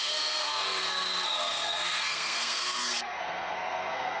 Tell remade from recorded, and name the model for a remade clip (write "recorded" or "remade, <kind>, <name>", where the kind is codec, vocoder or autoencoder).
remade, codec, SNAC